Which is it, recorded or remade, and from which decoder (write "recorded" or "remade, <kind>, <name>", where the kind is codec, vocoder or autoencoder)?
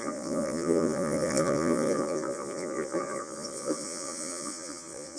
remade, vocoder, Vocos